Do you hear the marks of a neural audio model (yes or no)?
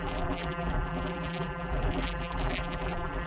yes